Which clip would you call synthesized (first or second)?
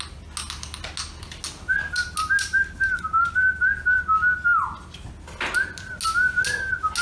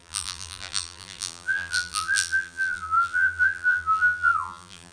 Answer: second